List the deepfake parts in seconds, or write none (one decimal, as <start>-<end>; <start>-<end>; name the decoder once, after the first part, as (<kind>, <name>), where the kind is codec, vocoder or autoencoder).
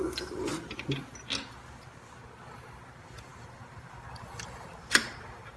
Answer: 0.0-0.5 (vocoder, BigVGAN v2); 2.9-5.6